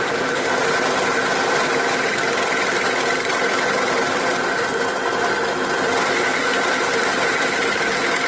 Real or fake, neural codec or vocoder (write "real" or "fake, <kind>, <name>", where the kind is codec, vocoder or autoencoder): real